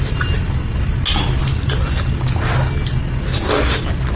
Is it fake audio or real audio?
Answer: real